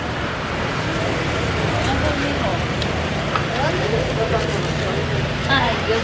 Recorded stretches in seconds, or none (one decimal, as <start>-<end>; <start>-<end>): 0.0-6.0